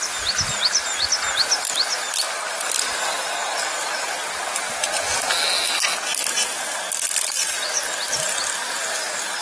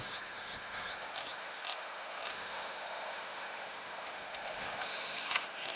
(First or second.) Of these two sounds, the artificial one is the second